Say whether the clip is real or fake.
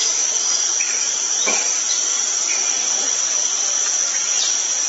real